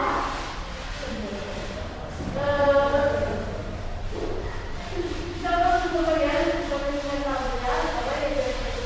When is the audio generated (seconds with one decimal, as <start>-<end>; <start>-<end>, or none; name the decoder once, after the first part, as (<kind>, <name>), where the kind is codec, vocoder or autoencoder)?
1.4-3.2 (vocoder, BigVGAN v2); 3.6-8.9